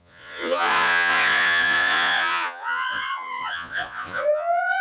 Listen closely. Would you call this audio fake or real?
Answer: fake